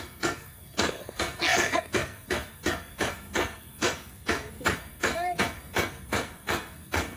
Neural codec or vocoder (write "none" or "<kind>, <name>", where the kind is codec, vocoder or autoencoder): codec, SNAC